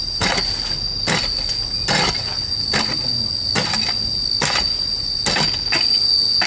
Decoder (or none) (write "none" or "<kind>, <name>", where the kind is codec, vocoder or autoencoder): none